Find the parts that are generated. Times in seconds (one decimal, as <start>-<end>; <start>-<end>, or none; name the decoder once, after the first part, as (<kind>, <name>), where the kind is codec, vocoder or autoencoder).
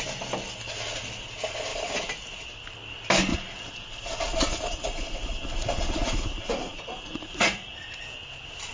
3.3-8.0 (vocoder, Vocos)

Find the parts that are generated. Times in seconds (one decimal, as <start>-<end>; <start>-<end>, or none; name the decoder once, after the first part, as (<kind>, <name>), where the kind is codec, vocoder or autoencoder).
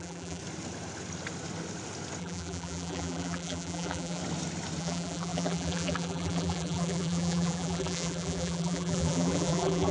0.0-0.4 (vocoder, BigVGAN v2); 2.2-4.2; 4.8-9.9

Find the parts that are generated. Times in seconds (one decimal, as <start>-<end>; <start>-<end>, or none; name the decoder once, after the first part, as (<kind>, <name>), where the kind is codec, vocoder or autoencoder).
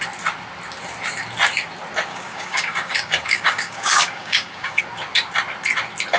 2.1-4.8 (codec, DAC)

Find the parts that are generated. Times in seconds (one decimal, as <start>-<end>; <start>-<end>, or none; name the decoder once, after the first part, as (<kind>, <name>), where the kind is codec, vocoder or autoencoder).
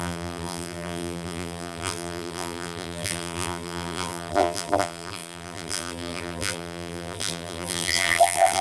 0.0-8.6 (vocoder, BigVGAN v2)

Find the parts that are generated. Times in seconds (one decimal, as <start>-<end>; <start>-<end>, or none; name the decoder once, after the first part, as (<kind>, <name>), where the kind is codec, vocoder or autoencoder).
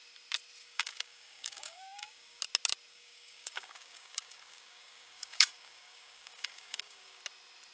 0.6-2.4 (codec, DAC); 2.9-7.2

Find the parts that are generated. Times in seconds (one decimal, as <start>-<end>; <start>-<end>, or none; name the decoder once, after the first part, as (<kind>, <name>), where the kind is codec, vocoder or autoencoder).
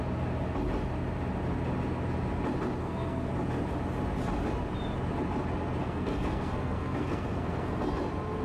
2.8-3.3 (codec, SNAC); 5.8-7.9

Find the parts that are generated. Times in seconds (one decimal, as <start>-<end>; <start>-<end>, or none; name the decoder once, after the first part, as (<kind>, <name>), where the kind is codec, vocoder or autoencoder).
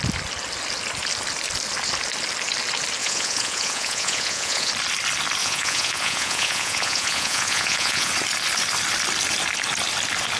3.0-4.7 (vocoder, Vocos); 5.4-8.1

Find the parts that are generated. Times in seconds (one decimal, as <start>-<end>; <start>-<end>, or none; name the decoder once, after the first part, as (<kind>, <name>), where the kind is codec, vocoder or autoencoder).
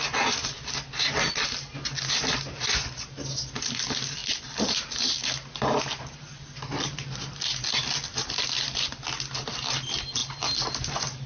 none